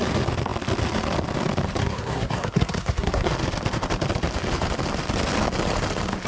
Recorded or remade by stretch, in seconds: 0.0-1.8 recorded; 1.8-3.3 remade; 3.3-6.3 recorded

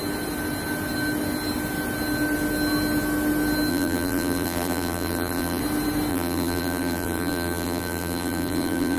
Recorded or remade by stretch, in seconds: 0.0-3.7 recorded; 3.7-5.6 remade; 5.6-6.1 recorded; 6.1-9.0 remade